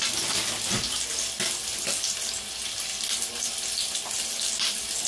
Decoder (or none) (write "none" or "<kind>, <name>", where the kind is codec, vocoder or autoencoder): none